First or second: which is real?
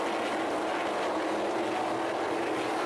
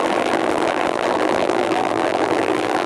first